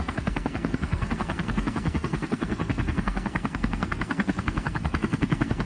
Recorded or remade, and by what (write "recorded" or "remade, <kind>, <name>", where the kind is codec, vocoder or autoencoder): remade, codec, SNAC